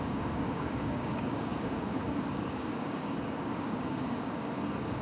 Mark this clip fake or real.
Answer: fake